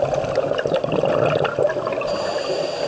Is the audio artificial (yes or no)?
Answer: no